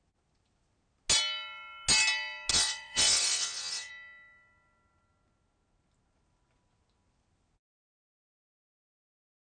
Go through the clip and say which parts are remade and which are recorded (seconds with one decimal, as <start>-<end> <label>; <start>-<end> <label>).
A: 0.0-2.5 recorded; 2.5-3.9 remade; 3.9-9.4 recorded